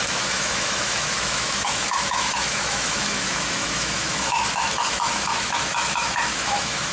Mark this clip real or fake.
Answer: fake